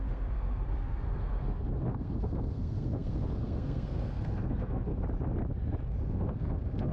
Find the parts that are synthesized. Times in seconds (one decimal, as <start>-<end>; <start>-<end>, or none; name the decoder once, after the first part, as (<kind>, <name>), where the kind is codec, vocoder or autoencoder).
0.0-4.9 (codec, SNAC); 6.0-6.9